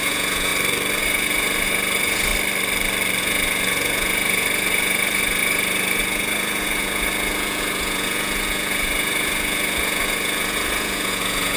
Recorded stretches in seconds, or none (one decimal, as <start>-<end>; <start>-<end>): 0.5-1.0; 2.3-3.2